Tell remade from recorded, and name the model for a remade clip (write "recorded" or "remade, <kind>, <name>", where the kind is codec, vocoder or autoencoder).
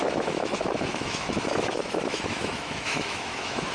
remade, autoencoder, DAC-VAE